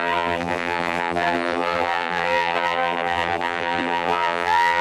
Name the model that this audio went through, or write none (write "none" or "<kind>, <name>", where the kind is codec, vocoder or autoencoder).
vocoder, BigVGAN v2